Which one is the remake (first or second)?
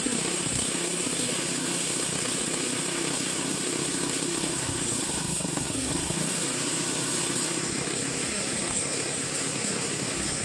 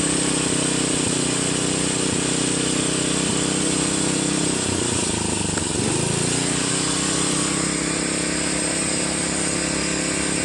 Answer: first